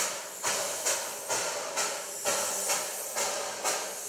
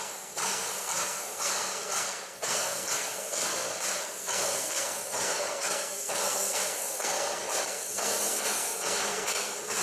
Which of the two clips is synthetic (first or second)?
second